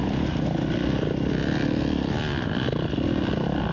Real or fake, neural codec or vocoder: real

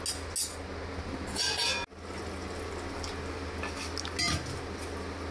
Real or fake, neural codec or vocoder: real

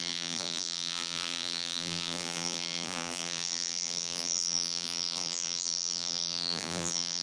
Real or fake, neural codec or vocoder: fake, vocoder, BigVGAN v2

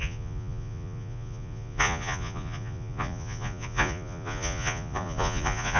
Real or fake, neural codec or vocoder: fake, vocoder, Vocos